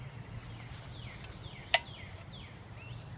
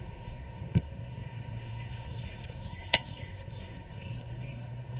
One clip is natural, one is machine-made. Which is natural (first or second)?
first